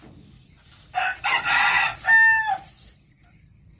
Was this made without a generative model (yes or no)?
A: yes